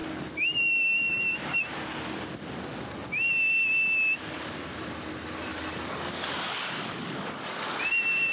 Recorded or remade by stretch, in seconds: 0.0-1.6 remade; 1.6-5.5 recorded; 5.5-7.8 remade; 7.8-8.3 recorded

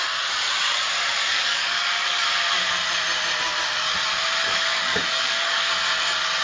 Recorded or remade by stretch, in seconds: 0.0-1.2 recorded; 1.2-2.3 remade; 2.3-4.4 recorded; 4.4-5.7 remade; 5.7-6.4 recorded

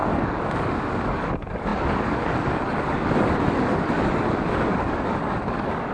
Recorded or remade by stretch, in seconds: 0.0-5.9 remade

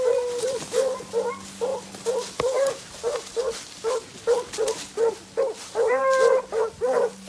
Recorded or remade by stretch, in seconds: 0.0-7.3 recorded

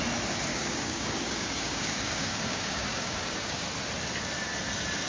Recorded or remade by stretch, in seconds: 0.0-0.5 recorded; 0.5-3.6 remade; 3.6-5.1 recorded

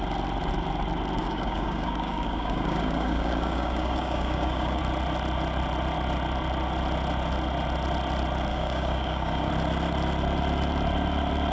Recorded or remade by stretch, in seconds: 0.0-1.2 recorded; 1.2-4.8 remade; 4.8-8.5 recorded; 8.5-9.5 remade; 9.5-11.5 recorded

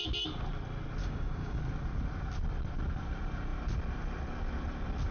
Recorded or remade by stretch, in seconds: 0.0-1.0 recorded; 1.0-1.6 remade; 1.6-5.1 recorded